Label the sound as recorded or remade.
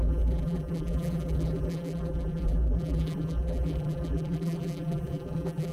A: remade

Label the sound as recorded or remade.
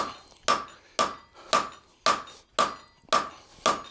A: recorded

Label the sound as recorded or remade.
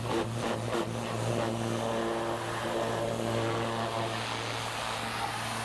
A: recorded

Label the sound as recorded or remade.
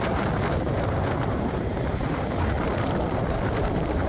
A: remade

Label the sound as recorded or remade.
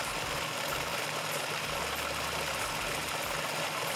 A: recorded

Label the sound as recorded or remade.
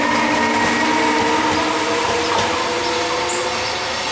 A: recorded